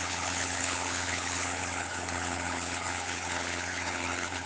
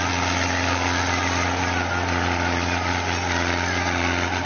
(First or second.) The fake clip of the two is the first